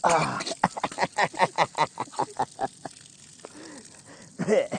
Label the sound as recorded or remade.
recorded